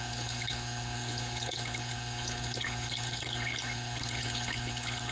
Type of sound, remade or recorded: remade